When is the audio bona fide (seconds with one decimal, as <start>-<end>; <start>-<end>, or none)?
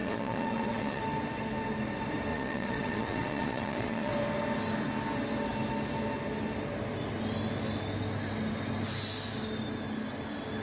1.0-2.3; 4.1-10.6